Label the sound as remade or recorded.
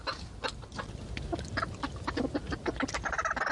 recorded